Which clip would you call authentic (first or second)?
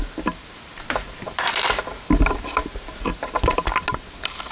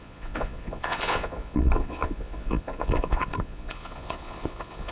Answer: first